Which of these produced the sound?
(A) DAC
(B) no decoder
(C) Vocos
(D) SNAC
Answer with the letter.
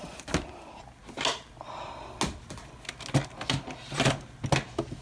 B